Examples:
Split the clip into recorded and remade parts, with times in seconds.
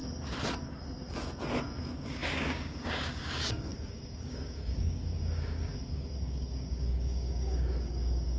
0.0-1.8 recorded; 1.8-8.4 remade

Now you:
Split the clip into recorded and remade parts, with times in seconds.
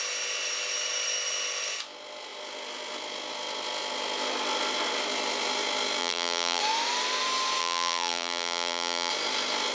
0.0-6.0 recorded; 6.0-6.6 remade; 6.6-7.6 recorded; 7.6-9.1 remade; 9.1-9.7 recorded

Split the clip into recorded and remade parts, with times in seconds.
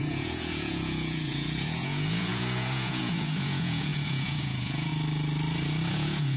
0.0-4.9 remade; 4.9-5.9 recorded; 5.9-6.4 remade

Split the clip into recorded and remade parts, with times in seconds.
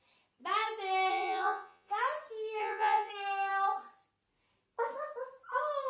0.0-1.1 recorded; 1.1-1.9 remade; 1.9-2.6 recorded; 2.6-3.1 remade; 3.1-5.9 recorded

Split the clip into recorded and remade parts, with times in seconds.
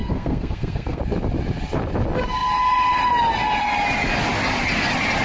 0.0-1.0 remade; 1.0-5.2 recorded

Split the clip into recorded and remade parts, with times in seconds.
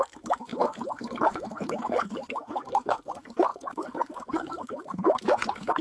0.0-5.8 remade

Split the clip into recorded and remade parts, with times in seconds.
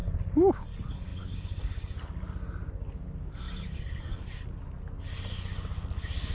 0.0-6.3 recorded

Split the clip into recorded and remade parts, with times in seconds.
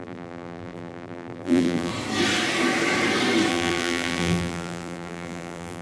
0.0-1.9 remade; 1.9-3.5 recorded; 3.5-5.8 remade